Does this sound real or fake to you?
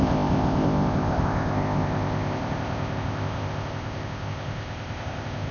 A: fake